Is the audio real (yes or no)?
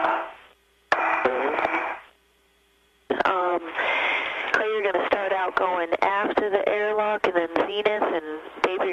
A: no